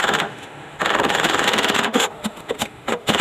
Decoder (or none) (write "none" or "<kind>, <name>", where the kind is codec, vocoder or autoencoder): autoencoder, DAC-VAE